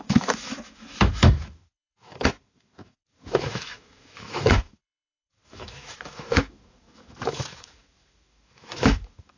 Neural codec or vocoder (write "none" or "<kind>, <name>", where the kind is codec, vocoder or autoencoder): autoencoder, DAC-VAE